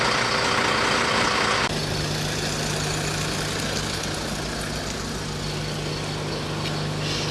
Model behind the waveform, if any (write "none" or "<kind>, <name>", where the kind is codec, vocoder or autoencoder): none